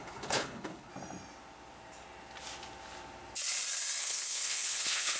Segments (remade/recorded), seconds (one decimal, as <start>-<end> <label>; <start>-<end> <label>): 0.0-0.9 remade; 0.9-4.0 recorded; 4.0-5.2 remade